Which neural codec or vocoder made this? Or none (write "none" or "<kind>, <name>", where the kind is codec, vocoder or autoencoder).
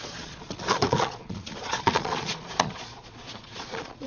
vocoder, Vocos